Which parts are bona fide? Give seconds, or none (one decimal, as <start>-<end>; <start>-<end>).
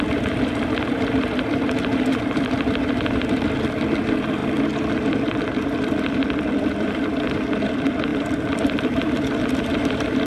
none